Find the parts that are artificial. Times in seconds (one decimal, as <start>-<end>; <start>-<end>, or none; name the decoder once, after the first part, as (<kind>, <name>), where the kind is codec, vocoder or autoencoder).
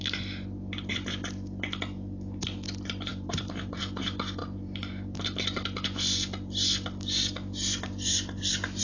3.1-3.8 (vocoder, BigVGAN v2)